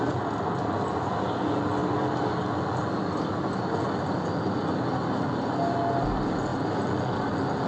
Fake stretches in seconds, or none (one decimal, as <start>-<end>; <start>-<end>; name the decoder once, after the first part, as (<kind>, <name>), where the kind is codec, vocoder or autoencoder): 1.8-2.3 (vocoder, BigVGAN v2)

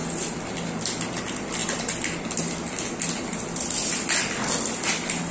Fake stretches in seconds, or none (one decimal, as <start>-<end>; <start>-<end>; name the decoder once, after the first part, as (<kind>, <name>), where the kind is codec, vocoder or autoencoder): none

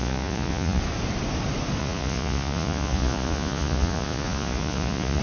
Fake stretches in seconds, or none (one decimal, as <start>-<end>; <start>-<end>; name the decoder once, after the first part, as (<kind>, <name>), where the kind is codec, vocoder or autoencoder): 0.0-0.8 (vocoder, Vocos); 1.8-5.2

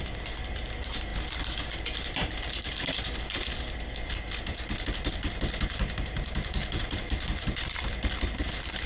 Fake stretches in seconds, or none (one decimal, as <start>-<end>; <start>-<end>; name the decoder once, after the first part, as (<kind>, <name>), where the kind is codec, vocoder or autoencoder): 6.8-7.8 (vocoder, BigVGAN v2)

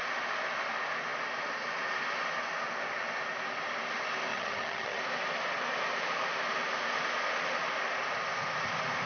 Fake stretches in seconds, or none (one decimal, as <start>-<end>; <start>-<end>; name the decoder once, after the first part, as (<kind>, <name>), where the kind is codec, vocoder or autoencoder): 4.3-5.0 (vocoder, HiFi-GAN)

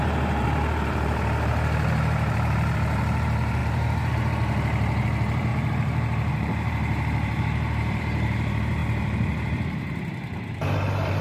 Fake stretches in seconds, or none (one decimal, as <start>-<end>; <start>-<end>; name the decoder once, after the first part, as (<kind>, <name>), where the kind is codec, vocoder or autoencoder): 0.0-11.2 (vocoder, BigVGAN v2)

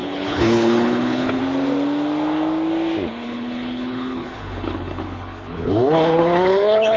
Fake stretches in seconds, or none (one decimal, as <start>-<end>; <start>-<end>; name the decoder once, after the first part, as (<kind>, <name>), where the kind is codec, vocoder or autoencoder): 0.0-1.4 (codec, HILCodec); 3.1-7.0